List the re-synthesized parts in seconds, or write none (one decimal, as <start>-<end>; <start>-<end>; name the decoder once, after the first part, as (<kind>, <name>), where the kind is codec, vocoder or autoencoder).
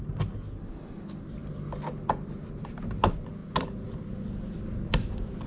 none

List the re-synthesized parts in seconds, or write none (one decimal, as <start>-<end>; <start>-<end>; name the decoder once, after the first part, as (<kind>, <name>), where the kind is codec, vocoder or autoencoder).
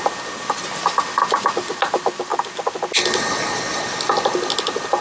none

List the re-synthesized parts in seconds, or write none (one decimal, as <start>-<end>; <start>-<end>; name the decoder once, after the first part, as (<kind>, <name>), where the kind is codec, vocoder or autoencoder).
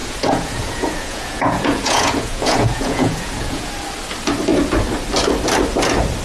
0.0-3.7 (vocoder, Vocos)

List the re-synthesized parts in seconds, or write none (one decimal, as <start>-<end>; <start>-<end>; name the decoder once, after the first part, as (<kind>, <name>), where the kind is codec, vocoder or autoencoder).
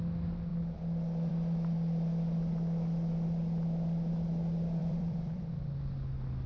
4.8-5.5 (vocoder, BigVGAN v2)